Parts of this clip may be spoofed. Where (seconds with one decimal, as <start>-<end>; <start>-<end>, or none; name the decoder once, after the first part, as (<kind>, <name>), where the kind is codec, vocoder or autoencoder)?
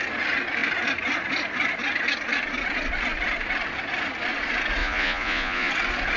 4.8-5.7 (vocoder, Vocos)